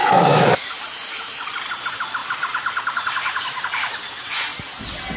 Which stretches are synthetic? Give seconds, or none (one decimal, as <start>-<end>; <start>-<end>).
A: 0.0-1.5

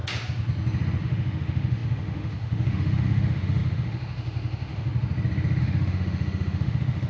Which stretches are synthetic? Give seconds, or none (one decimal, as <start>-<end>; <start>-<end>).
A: 1.0-4.9; 5.6-7.1

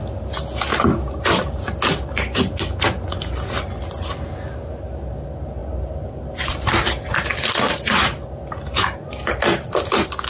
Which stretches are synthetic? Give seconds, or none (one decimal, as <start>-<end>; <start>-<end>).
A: none

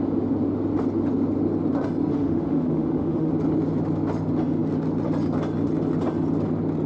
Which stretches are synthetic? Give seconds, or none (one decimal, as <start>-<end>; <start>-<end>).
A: 2.1-3.3

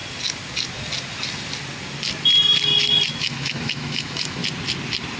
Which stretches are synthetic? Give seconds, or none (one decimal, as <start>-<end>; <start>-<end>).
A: 3.1-4.4

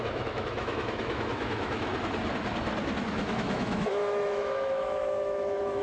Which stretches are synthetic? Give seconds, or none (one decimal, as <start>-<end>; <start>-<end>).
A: 0.0-1.9; 3.1-5.8

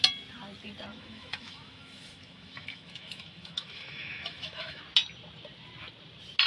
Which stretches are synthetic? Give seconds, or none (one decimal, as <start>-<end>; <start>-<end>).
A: 0.9-4.8

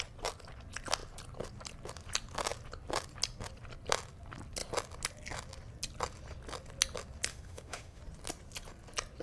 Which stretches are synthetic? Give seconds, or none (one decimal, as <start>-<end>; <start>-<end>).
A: 7.3-8.0